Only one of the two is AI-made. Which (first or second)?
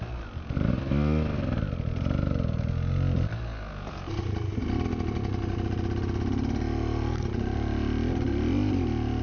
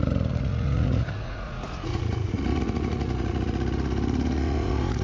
second